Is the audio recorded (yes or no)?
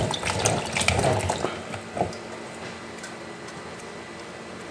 yes